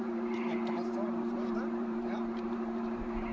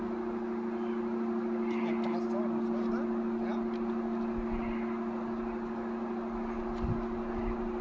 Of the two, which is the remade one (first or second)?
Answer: first